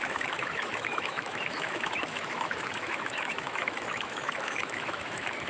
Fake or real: fake